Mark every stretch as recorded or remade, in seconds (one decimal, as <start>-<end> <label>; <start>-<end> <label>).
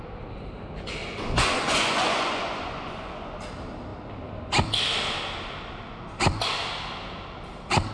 0.0-1.0 recorded; 1.0-3.3 remade; 3.3-7.9 recorded